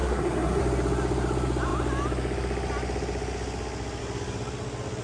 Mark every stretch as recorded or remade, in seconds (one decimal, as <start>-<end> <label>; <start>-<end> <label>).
0.0-0.6 remade; 0.6-5.0 recorded